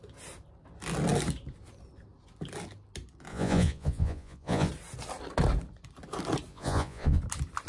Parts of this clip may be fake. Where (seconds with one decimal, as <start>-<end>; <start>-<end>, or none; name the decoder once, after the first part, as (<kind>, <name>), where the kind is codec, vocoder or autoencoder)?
3.3-4.7 (vocoder, Vocos); 6.5-7.2